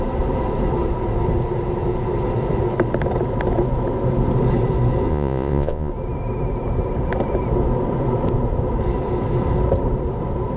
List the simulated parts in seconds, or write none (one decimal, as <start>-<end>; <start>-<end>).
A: 5.1-5.9